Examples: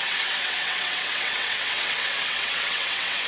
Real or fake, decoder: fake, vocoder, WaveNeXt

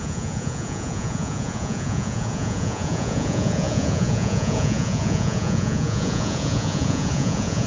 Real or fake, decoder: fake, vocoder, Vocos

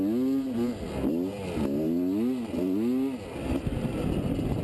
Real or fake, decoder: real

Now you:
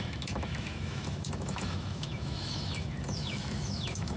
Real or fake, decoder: fake, autoencoder, DAC-VAE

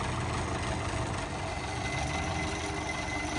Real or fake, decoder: real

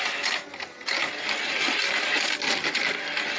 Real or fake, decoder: real